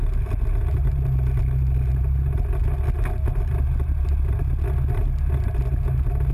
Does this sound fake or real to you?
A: real